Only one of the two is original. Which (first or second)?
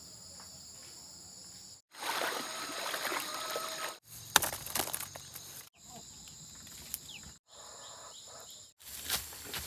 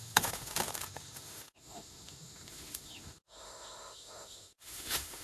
first